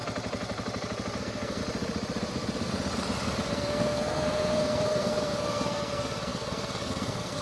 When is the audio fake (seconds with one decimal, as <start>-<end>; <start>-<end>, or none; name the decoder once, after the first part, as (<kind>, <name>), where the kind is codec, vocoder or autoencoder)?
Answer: 1.2-1.6 (codec, SNAC); 3.5-7.4